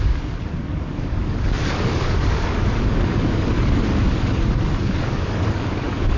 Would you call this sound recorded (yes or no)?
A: no